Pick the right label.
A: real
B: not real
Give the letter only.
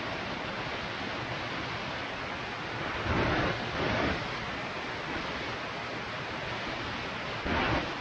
A